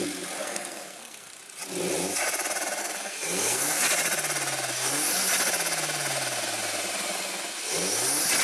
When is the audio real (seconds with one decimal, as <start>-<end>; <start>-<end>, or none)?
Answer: 0.0-0.4; 1.4-2.8; 3.8-8.4